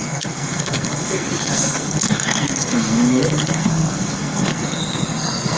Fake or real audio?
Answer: fake